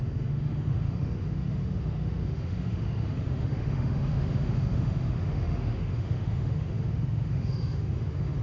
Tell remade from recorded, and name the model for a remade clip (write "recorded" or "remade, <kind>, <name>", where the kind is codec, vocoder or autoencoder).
remade, autoencoder, DAC-VAE